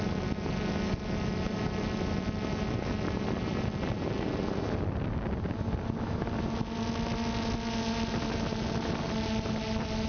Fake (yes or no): no